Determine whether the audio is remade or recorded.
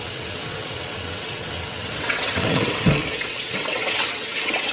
remade